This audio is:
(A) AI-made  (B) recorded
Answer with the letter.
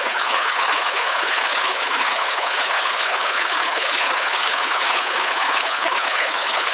A